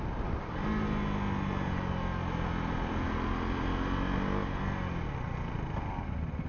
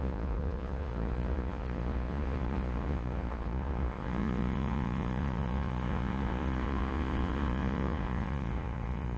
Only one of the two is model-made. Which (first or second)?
second